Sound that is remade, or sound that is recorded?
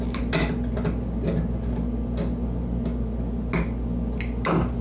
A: recorded